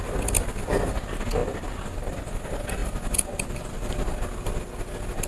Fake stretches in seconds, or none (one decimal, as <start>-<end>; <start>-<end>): none